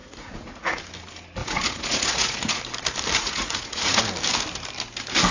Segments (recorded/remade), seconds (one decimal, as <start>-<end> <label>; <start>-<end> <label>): 0.0-0.8 remade; 0.8-1.4 recorded; 1.4-2.6 remade; 2.6-3.2 recorded; 3.2-4.0 remade; 4.0-5.3 recorded